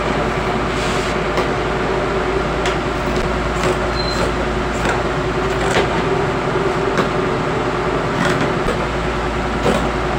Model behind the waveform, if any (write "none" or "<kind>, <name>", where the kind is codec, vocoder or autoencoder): none